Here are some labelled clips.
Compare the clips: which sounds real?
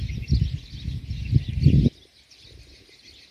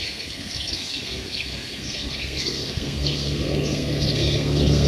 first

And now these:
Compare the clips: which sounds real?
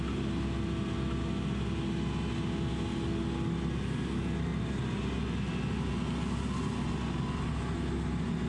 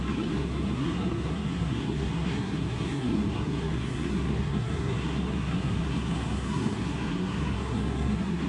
first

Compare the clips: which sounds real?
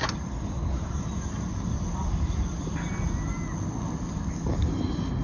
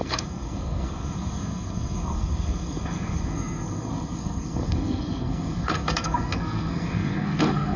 first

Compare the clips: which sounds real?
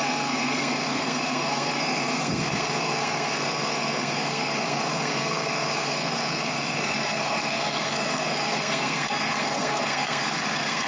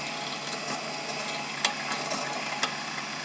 second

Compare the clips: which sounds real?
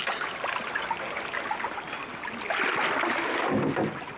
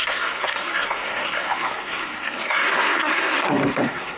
first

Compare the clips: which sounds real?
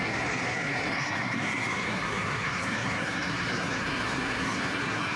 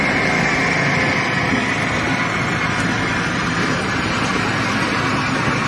second